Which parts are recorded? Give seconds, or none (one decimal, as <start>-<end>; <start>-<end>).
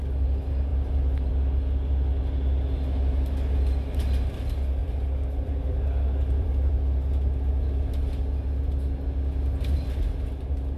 0.0-4.8; 6.7-10.8